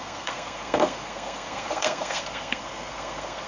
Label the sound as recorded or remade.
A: remade